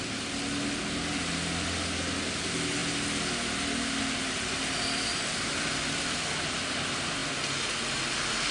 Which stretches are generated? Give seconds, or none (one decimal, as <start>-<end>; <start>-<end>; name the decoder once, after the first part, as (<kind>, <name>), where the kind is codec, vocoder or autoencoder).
none

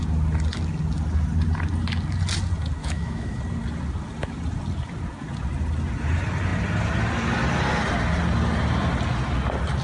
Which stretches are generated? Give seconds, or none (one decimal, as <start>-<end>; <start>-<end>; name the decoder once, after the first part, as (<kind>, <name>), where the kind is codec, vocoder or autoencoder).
2.8-3.4 (autoencoder, DAC-VAE)

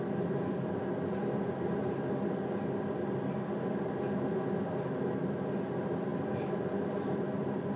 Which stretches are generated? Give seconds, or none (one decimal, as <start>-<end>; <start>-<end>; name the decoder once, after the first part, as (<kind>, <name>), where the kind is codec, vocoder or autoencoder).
none

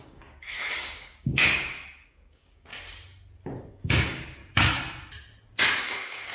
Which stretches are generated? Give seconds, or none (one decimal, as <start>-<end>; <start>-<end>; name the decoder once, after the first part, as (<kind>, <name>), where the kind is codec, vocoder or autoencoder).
0.0-2.7 (codec, DAC); 3.7-4.4; 5.6-6.3